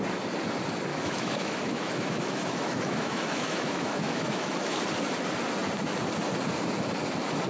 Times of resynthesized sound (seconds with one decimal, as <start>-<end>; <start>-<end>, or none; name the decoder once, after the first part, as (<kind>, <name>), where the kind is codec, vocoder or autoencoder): 0.9-4.8 (autoencoder, DAC-VAE)